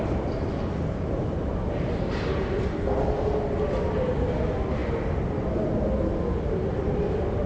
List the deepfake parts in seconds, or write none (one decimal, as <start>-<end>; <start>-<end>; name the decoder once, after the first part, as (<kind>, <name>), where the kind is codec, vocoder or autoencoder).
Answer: none